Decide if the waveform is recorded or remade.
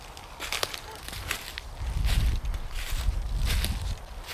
recorded